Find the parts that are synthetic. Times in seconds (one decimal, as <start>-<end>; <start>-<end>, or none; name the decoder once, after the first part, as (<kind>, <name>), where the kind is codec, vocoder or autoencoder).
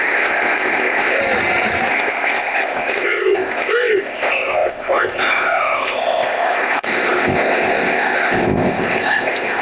0.0-1.2 (codec, ZipCodec); 1.9-9.6